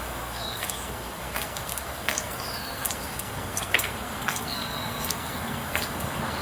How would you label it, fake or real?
fake